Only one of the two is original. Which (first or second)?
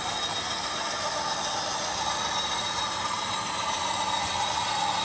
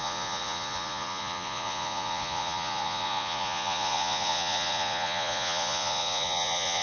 first